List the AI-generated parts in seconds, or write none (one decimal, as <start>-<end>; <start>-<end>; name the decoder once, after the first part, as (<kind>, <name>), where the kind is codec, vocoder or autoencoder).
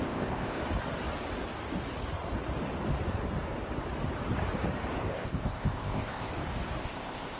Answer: 0.0-0.6 (codec, ZipCodec); 5.0-6.3; 6.8-7.4